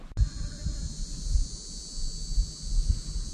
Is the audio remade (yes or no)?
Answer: no